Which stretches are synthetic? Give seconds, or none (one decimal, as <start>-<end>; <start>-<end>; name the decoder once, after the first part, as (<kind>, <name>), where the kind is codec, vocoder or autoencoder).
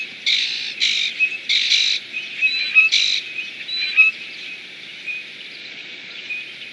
5.6-6.3 (vocoder, Vocos)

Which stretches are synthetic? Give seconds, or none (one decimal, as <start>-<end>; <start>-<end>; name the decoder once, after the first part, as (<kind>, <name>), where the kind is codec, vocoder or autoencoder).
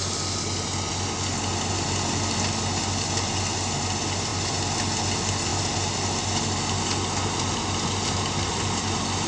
none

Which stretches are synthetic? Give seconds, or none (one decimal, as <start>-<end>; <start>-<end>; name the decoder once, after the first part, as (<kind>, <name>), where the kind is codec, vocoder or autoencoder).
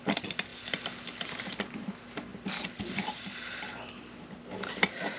none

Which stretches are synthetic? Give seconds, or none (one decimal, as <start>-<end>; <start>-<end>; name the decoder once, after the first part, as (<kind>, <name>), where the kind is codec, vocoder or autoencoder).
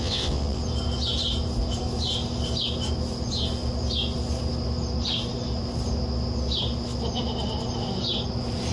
0.0-0.6 (vocoder, WaveNeXt)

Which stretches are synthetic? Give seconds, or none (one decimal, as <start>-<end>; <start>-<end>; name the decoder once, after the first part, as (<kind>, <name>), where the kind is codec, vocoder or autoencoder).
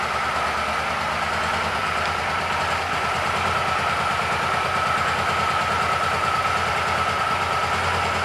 none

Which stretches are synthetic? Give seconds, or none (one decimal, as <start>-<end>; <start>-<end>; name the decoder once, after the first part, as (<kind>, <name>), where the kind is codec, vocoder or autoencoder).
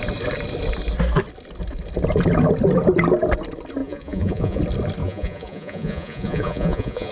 3.8-4.6 (vocoder, Vocos); 5.0-7.1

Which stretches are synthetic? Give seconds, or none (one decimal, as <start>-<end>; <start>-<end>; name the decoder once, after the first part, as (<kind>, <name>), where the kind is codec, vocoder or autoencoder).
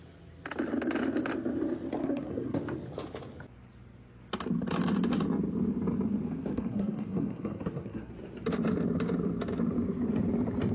2.0-2.6 (codec, SNAC); 6.5-8.1